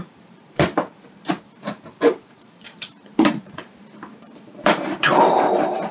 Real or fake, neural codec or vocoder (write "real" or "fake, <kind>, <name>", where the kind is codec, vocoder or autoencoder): fake, vocoder, BigVGAN v2